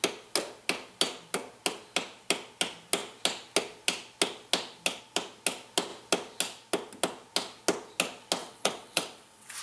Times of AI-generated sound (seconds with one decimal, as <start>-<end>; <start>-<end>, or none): 8.4-9.6

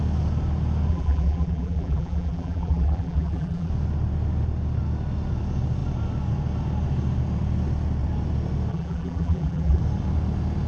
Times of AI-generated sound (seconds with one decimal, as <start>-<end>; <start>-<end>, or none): 0.9-3.7; 8.7-9.8

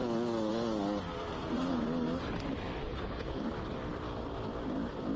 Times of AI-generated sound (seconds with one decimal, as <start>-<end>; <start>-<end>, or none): 2.8-3.4

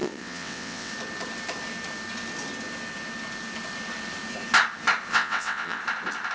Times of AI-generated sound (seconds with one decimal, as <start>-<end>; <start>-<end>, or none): 0.0-0.9; 5.1-5.8

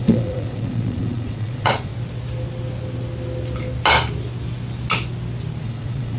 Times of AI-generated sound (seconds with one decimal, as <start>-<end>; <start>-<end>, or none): 0.0-1.9; 5.6-6.2

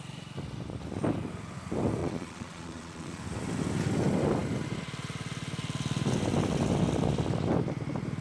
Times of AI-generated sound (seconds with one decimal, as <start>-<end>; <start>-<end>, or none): 2.0-3.2

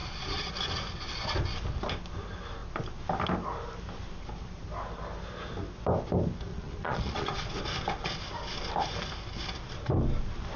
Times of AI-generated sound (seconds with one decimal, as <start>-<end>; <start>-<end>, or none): 0.0-0.5; 6.5-7.6